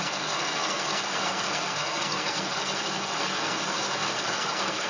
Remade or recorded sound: remade